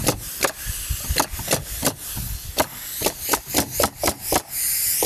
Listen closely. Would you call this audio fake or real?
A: real